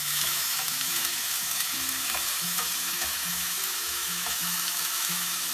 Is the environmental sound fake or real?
fake